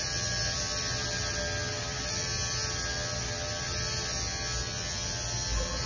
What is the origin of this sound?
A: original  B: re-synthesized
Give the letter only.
A